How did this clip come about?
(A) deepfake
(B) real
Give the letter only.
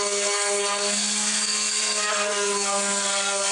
A